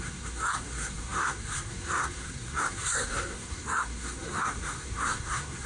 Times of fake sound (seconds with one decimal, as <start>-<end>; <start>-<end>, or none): 0.0-5.7